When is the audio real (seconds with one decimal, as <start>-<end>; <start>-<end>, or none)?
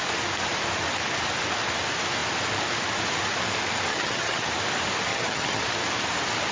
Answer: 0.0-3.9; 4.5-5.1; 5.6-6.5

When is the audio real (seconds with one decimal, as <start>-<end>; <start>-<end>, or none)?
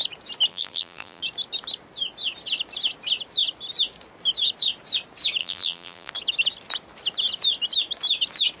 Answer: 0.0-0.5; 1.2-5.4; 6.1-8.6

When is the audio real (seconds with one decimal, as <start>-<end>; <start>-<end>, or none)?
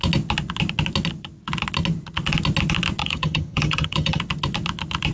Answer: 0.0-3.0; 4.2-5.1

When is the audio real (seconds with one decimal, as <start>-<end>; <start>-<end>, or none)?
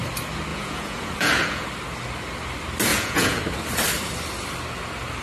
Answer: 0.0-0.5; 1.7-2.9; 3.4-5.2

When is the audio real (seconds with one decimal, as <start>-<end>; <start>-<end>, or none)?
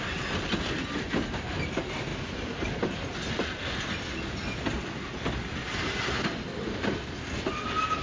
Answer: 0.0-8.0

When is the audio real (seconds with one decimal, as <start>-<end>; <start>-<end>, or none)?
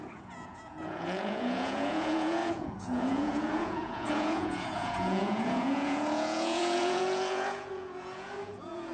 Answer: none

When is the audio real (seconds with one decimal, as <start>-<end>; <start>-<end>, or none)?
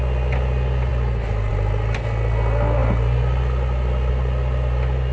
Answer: 0.0-5.1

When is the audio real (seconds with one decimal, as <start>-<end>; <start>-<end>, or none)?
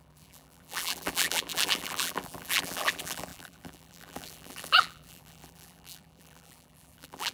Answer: none